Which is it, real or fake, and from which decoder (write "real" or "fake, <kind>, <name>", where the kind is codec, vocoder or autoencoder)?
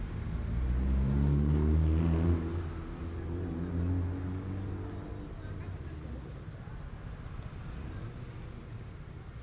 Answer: real